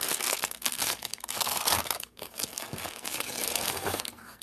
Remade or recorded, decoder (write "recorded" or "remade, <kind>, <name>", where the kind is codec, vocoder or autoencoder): remade, codec, SNAC